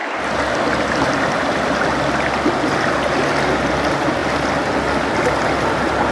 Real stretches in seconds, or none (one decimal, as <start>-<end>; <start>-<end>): 0.0-6.1